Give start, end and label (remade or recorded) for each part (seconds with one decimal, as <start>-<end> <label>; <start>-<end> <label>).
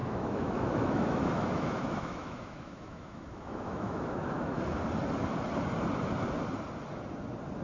0.0-4.6 remade; 4.6-7.6 recorded